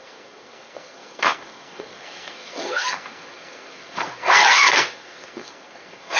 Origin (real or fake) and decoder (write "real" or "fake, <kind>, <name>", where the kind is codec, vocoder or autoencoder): fake, codec, SNAC